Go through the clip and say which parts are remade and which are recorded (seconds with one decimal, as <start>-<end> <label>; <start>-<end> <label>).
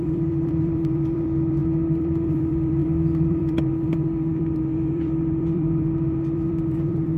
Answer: 0.0-7.2 remade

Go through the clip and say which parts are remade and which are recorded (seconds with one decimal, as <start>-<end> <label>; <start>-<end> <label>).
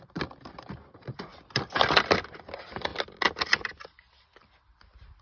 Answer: 0.0-1.3 remade; 1.3-2.2 recorded; 2.2-2.9 remade; 2.9-5.2 recorded